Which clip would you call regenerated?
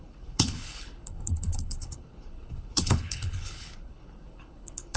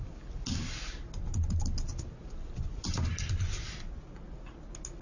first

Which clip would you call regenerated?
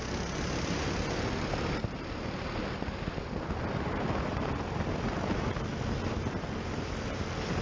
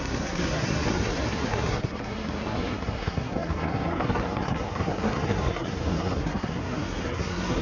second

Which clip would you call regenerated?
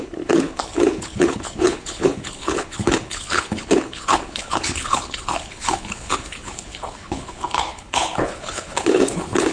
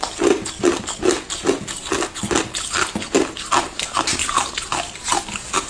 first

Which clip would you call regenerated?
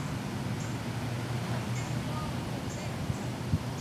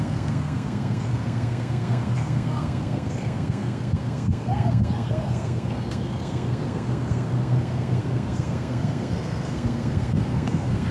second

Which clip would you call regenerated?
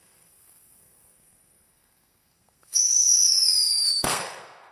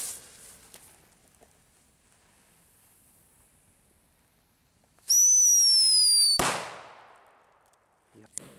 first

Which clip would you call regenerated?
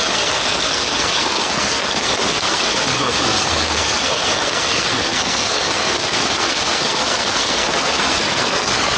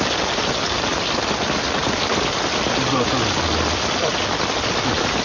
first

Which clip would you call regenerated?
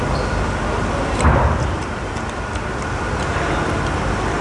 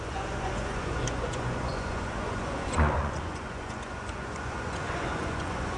second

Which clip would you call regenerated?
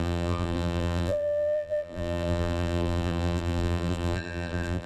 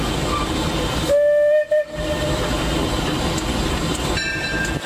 first